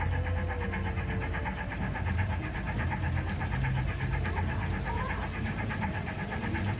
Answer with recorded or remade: recorded